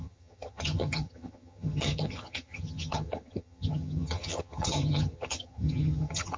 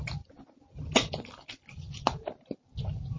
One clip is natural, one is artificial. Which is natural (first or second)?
second